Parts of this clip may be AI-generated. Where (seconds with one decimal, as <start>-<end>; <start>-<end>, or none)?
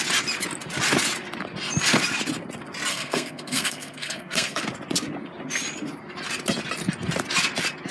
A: 2.9-4.6